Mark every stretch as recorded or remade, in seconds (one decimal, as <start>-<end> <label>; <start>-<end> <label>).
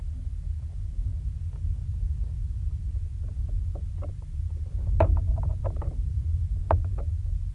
0.0-1.1 remade; 1.1-4.1 recorded; 4.1-5.1 remade; 5.1-5.6 recorded; 5.6-6.6 remade; 6.6-7.5 recorded